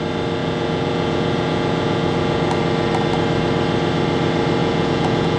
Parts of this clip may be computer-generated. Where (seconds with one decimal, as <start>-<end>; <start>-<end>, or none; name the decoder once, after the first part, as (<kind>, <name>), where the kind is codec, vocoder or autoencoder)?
0.4-2.5 (vocoder, Vocos); 4.6-5.4